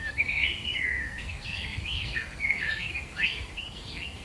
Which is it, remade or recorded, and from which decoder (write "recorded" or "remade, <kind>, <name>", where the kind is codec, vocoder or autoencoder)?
remade, codec, SNAC